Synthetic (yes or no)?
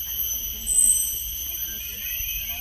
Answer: no